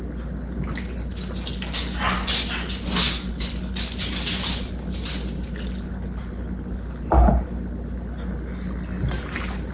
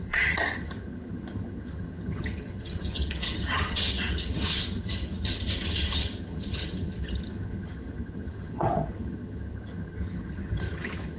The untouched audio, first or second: first